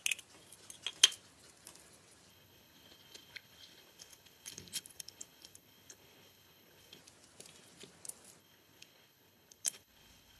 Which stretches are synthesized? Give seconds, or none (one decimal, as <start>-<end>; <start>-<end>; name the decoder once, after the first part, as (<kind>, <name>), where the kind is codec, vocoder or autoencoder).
2.3-7.0 (codec, HILCodec); 8.4-10.4